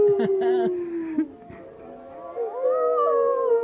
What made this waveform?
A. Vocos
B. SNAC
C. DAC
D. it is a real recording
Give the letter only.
D